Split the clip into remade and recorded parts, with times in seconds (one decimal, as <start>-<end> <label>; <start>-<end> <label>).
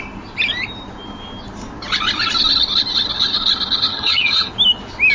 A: 0.0-3.9 recorded; 3.9-4.5 remade; 4.5-5.1 recorded